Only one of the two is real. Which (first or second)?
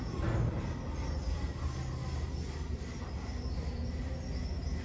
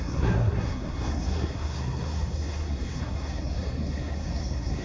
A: first